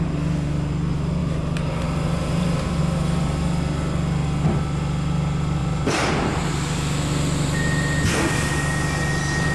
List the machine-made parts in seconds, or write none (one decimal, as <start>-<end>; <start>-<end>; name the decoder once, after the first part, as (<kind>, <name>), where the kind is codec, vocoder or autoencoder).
1.2-2.8 (vocoder, BigVGAN v2); 5.6-6.5